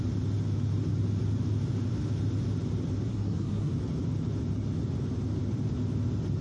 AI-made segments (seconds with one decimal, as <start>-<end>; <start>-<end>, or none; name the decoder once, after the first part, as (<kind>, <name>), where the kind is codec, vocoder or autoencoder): 3.1-3.7 (codec, SNAC)